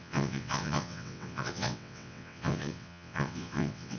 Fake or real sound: fake